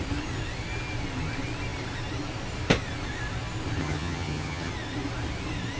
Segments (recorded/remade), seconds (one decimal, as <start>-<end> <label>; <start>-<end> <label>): 0.0-3.8 recorded; 3.8-4.7 remade; 4.7-5.8 recorded